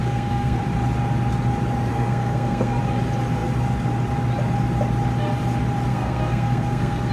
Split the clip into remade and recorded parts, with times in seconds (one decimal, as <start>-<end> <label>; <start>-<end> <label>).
0.0-0.6 remade; 0.6-1.9 recorded; 1.9-2.8 remade; 2.8-5.9 recorded; 5.9-7.1 remade